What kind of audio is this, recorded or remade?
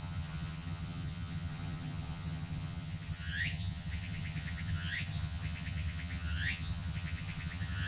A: remade